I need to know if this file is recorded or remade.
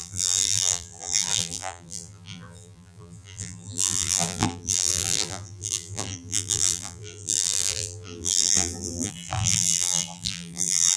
remade